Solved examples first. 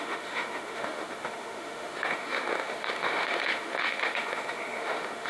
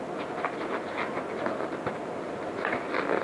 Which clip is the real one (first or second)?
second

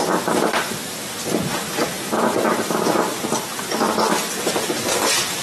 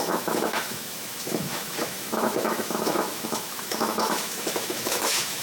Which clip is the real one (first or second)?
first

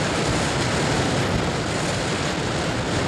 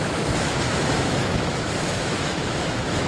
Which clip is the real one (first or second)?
first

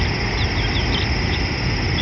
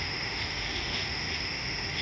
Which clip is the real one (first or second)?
first